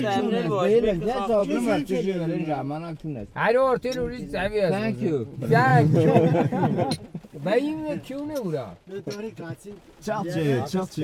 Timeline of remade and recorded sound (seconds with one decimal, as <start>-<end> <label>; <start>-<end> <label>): 0.0-1.4 recorded; 1.4-3.0 remade; 3.0-11.0 recorded